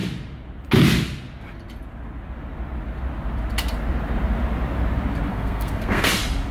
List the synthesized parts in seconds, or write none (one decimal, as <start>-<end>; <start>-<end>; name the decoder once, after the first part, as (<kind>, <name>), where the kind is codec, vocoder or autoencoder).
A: 5.3-6.1 (codec, SNAC)